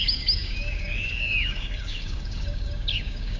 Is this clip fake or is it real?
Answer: fake